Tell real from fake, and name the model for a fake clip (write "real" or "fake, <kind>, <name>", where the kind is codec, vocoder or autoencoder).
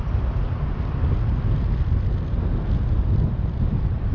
real